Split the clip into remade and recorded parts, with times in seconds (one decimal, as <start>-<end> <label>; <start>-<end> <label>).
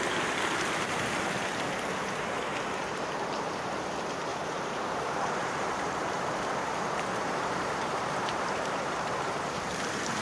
0.0-2.5 remade; 2.5-3.2 recorded; 3.2-10.2 remade